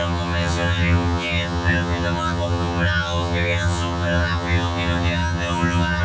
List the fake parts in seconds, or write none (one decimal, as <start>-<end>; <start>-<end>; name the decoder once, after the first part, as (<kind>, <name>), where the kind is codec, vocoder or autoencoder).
0.0-6.0 (vocoder, HiFi-GAN)

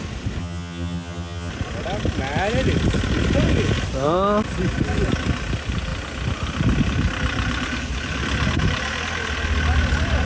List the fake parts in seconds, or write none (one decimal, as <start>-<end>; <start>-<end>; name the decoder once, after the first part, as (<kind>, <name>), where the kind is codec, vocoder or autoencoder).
0.4-1.5 (vocoder, HiFi-GAN)

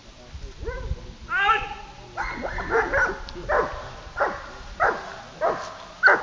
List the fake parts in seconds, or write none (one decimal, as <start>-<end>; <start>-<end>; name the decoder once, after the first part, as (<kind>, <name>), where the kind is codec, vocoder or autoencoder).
none

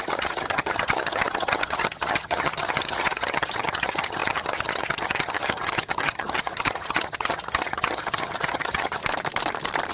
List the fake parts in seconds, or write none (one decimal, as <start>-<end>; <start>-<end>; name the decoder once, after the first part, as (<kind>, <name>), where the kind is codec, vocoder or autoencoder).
0.0-9.0 (vocoder, HiFi-GAN)

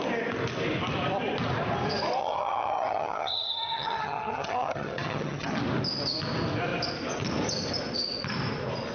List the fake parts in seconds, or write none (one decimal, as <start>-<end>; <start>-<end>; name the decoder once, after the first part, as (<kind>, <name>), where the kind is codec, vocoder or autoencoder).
2.2-5.6 (vocoder, HiFi-GAN)

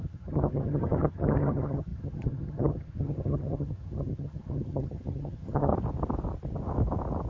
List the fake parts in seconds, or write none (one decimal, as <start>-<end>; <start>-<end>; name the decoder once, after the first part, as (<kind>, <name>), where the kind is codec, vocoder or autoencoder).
0.0-5.7 (vocoder, HiFi-GAN)

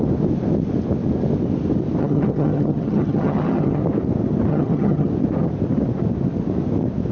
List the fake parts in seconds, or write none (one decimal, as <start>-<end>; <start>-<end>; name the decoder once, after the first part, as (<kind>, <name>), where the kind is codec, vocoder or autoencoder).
2.0-3.8 (vocoder, HiFi-GAN); 4.5-5.1